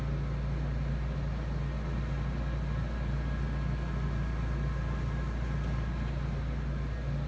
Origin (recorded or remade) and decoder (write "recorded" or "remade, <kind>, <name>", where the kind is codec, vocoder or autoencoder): recorded